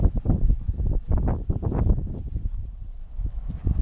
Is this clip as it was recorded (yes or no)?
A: no